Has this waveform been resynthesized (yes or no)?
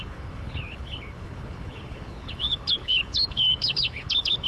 yes